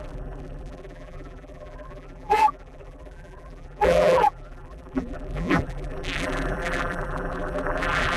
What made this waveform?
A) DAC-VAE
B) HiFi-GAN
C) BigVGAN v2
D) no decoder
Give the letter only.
C